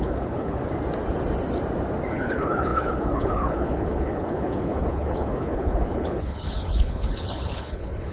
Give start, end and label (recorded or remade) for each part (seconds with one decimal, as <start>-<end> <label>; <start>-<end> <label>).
0.0-0.6 remade; 0.6-2.1 recorded; 2.1-8.1 remade